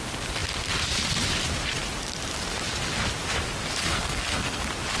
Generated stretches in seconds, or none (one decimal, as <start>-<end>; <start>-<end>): 3.9-4.6